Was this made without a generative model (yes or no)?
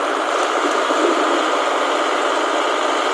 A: yes